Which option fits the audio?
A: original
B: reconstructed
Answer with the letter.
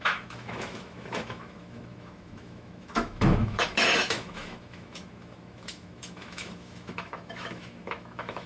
B